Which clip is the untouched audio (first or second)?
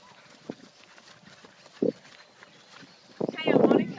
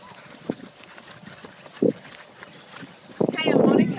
first